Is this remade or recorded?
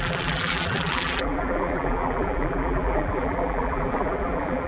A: remade